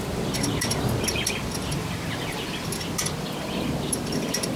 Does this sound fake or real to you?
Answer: real